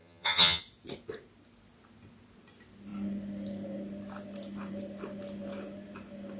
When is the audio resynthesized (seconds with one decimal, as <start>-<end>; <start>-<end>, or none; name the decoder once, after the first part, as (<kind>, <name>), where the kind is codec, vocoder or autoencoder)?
0.0-0.6 (vocoder, HiFi-GAN)